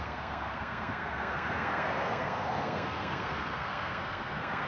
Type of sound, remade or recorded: remade